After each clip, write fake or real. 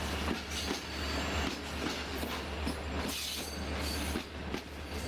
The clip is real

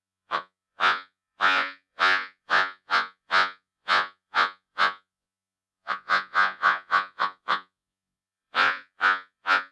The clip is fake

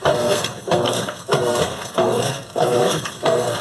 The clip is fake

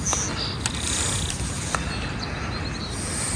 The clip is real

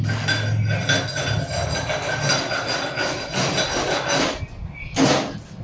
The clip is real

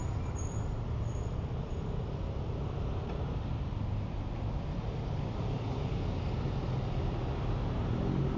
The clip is real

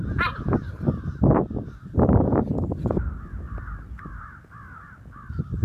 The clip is real